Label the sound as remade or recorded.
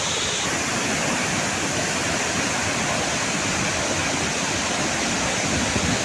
recorded